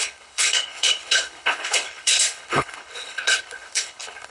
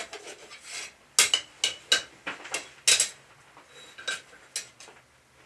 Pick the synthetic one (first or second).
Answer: first